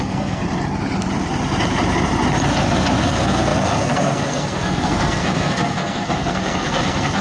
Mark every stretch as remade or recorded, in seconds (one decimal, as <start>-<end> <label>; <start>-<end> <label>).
0.0-0.4 remade; 0.4-3.0 recorded; 3.0-7.2 remade